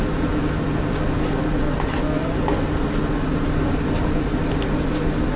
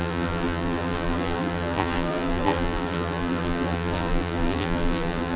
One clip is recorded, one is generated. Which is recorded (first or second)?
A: first